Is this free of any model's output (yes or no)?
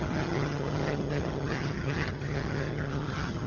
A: no